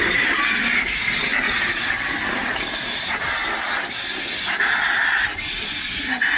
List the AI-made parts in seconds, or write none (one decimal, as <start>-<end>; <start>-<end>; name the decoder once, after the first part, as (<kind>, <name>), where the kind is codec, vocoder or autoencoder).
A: none